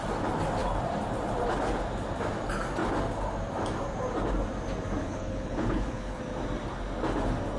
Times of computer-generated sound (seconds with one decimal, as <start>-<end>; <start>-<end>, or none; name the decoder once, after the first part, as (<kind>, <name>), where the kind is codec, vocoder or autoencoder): 5.0-6.2 (codec, HILCodec)